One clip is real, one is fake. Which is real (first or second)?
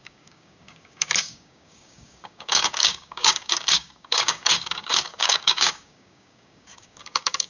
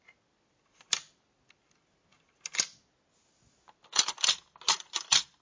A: second